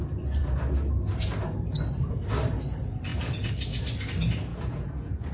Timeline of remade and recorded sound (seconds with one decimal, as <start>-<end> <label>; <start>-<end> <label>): 0.0-3.1 recorded; 3.1-3.8 remade; 3.8-4.5 recorded; 4.5-5.3 remade